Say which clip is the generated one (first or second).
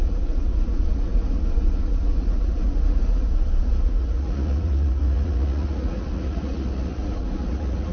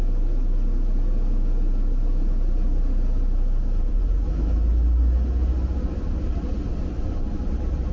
first